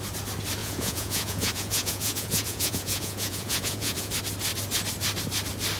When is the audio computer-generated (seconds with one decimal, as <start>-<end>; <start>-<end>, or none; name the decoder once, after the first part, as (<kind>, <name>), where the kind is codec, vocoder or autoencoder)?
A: 0.6-4.1 (vocoder, Vocos)